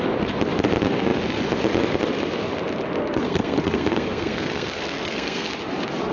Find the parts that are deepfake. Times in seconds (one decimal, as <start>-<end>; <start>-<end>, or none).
3.0-5.5